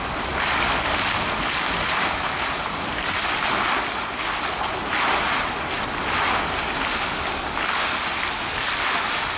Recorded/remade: recorded